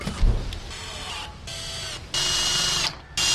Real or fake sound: real